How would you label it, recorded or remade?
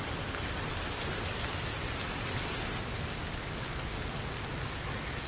recorded